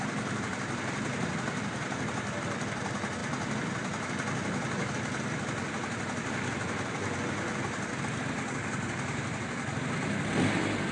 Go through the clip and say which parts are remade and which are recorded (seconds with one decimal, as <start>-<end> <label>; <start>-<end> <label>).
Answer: 0.0-10.9 recorded